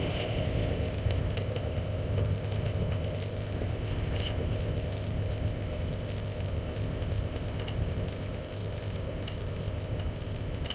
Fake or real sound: fake